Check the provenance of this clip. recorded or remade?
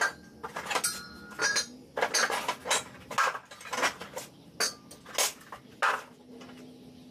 recorded